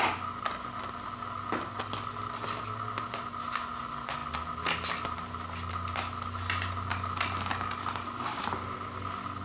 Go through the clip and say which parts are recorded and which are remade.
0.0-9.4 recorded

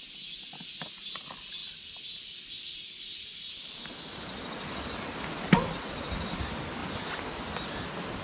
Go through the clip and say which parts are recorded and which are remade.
0.0-8.2 recorded

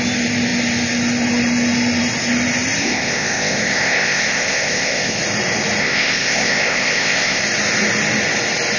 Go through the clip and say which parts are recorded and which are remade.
0.0-2.8 recorded; 2.8-5.2 remade; 5.2-5.8 recorded; 5.8-7.4 remade; 7.4-8.8 recorded

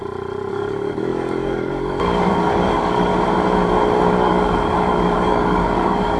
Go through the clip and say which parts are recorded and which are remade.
0.0-0.5 recorded; 0.5-3.1 remade; 3.1-4.1 recorded; 4.1-6.2 remade

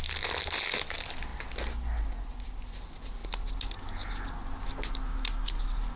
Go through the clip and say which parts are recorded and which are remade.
0.0-6.0 recorded

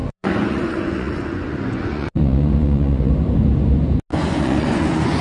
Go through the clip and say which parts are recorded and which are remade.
0.0-3.1 remade; 3.1-4.1 recorded; 4.1-5.2 remade

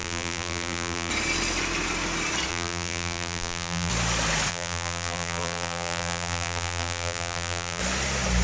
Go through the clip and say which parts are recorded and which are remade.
0.0-1.1 remade; 1.1-2.5 recorded; 2.5-3.9 remade; 3.9-4.5 recorded; 4.5-7.8 remade; 7.8-8.4 recorded